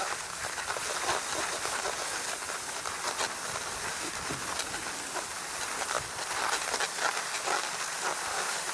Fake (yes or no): no